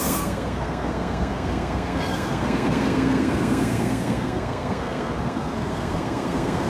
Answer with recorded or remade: remade